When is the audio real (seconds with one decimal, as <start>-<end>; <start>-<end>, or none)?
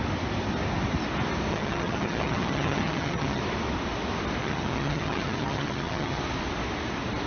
0.0-1.5; 3.4-4.4; 6.2-7.3